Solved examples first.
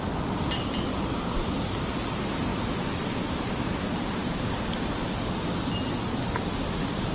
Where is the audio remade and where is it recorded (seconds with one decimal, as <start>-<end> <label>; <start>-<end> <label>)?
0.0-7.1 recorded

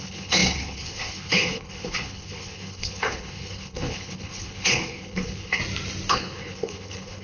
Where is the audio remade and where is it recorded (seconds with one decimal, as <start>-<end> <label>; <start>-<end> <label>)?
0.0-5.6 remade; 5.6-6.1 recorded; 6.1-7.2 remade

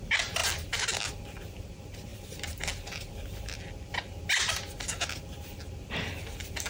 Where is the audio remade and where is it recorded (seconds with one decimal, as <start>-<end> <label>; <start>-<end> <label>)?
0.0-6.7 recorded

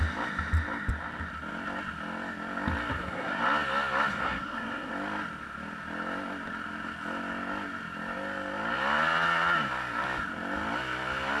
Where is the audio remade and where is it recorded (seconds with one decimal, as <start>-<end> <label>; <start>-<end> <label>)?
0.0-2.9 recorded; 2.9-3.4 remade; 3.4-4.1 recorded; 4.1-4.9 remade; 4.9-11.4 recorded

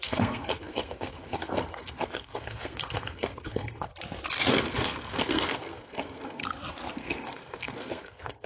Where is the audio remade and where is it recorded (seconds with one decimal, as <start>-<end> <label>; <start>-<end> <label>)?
0.0-3.9 remade; 3.9-4.5 recorded; 4.5-6.4 remade; 6.4-6.9 recorded; 6.9-8.5 remade

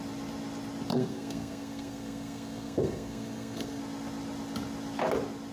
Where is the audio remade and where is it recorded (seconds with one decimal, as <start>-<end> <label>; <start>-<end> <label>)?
0.0-0.9 recorded; 0.9-3.8 remade; 3.8-5.5 recorded

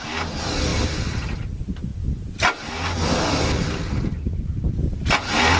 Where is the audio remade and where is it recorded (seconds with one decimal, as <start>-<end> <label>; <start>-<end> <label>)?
0.0-5.6 recorded